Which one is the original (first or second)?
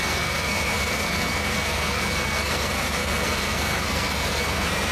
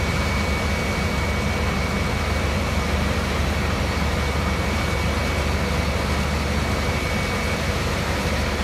second